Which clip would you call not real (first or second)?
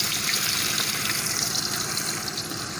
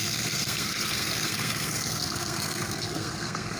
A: second